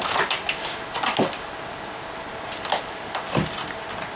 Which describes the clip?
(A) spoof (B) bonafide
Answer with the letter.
B